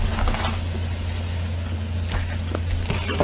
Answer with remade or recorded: recorded